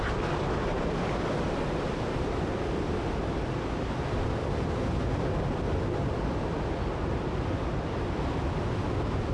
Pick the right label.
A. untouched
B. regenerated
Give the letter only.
A